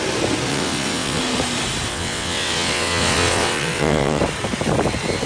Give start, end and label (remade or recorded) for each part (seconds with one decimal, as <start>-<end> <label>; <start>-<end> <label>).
0.0-0.5 recorded; 0.5-1.2 remade; 1.2-1.9 recorded; 1.9-4.2 remade; 4.2-5.3 recorded